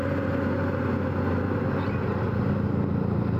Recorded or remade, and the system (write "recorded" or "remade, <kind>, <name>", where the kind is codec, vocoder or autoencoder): recorded